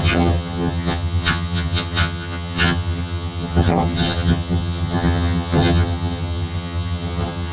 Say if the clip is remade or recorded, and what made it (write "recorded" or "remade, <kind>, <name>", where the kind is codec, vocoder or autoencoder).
remade, vocoder, HiFi-GAN